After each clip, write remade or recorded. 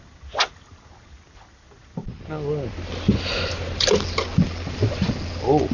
recorded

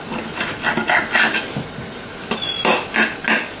recorded